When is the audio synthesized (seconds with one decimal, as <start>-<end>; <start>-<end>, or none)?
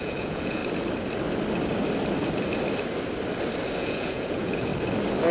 0.0-0.6; 3.8-4.7